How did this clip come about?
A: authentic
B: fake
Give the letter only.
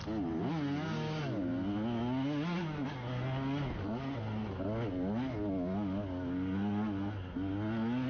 A